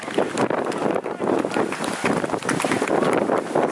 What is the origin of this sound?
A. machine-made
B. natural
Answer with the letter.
B